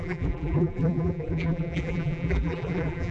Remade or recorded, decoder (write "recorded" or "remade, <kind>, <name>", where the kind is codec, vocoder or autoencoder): remade, vocoder, BigVGAN v2